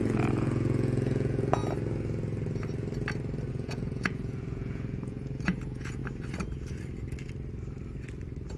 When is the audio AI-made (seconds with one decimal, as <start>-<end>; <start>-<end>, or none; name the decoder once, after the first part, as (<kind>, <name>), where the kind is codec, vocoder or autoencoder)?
0.0-1.6 (vocoder, Vocos); 3.5-6.0